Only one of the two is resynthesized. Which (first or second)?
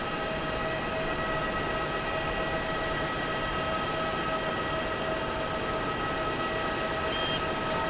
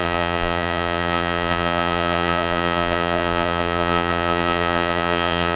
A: second